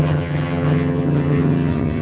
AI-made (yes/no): yes